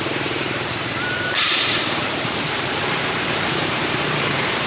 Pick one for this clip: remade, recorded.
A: remade